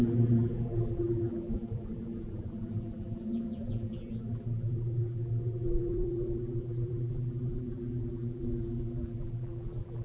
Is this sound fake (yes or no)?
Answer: yes